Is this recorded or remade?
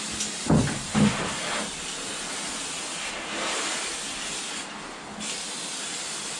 recorded